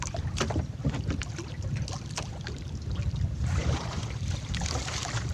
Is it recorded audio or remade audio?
remade